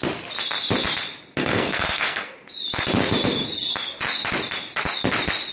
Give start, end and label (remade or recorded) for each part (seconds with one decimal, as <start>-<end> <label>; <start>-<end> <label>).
0.0-1.4 recorded; 1.4-2.3 remade; 2.3-5.5 recorded